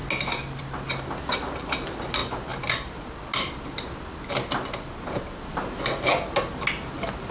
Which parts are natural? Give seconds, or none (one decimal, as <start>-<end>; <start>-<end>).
0.0-7.3